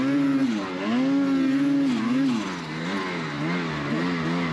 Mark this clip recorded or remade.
recorded